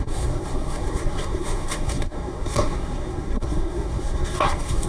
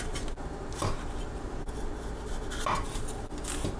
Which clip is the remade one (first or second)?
first